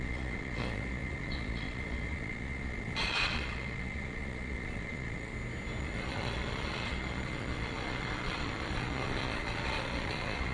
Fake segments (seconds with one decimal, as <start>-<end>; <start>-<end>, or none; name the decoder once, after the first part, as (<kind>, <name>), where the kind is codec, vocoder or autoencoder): 0.0-5.3 (vocoder, Vocos); 5.8-10.5